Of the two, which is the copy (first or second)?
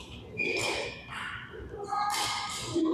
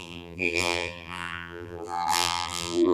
second